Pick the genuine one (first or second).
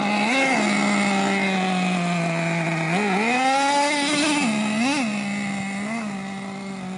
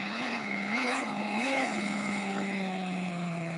first